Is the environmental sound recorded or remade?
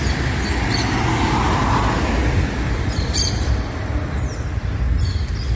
recorded